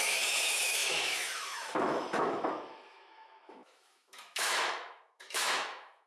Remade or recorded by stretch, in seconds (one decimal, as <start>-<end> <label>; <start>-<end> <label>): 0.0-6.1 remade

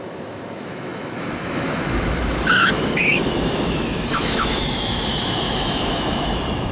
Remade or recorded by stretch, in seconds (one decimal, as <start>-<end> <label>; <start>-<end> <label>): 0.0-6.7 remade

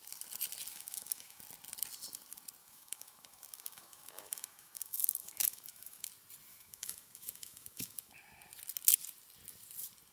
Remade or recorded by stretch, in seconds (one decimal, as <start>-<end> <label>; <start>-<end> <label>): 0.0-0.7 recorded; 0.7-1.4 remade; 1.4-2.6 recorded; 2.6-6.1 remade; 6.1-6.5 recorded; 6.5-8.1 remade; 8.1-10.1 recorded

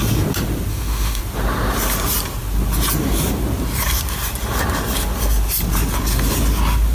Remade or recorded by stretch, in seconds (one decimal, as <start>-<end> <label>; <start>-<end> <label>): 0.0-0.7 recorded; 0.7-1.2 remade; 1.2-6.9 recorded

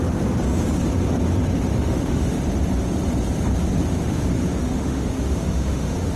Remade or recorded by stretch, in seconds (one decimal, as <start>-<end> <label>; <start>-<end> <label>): 0.0-1.7 recorded; 1.7-2.4 remade; 2.4-4.0 recorded; 4.0-6.2 remade

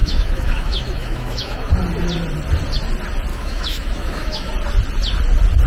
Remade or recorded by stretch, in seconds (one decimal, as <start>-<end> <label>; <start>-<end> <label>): 0.0-1.7 remade; 1.7-3.3 recorded; 3.3-4.5 remade; 4.5-5.7 recorded

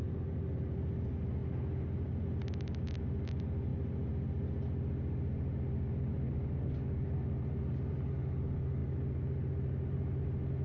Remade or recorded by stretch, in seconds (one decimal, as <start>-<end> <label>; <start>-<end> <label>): 0.0-10.6 recorded

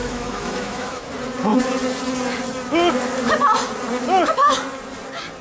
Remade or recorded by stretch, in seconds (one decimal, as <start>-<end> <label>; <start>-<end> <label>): 0.0-1.1 remade; 1.1-5.4 recorded